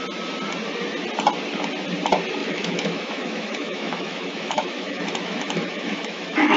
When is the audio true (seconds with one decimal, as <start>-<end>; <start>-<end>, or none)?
0.0-2.4